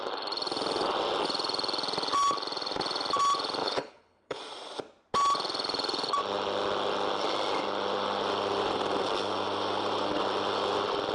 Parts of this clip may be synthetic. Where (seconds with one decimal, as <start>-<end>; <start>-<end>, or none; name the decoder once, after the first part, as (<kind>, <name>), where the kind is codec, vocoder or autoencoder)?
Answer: 3.6-4.4 (codec, HILCodec)